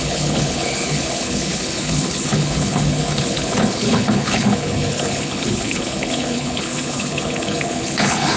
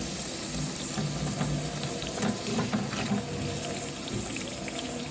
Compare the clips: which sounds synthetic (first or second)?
first